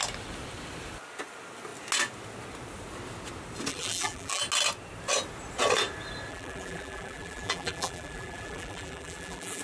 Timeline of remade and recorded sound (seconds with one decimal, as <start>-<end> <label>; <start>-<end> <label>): 0.0-3.7 recorded; 3.7-4.4 remade; 4.4-6.3 recorded; 6.3-9.6 remade